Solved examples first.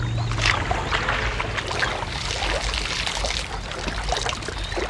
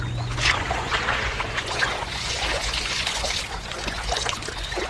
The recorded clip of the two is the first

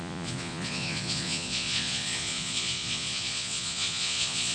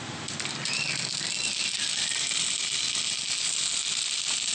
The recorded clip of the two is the second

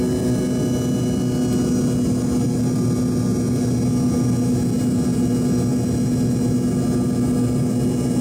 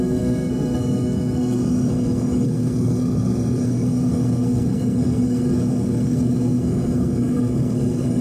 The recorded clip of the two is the first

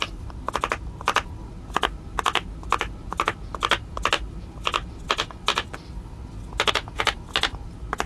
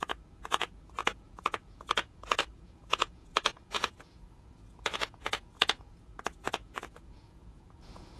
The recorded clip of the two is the first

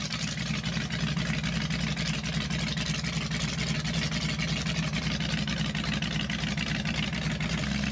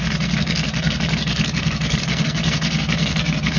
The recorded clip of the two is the first